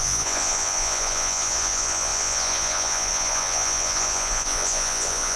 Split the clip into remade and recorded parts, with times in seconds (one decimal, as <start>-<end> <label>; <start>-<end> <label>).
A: 0.0-5.4 remade